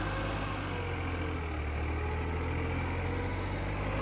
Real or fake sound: real